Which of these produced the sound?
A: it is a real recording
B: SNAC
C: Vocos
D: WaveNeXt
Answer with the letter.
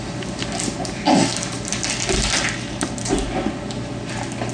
A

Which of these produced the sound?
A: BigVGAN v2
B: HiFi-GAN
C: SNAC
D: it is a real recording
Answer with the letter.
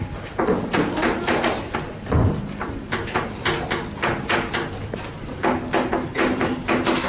D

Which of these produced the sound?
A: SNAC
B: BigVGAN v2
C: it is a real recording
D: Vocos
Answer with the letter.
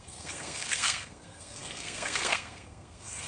A